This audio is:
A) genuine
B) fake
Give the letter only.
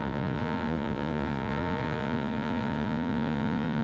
B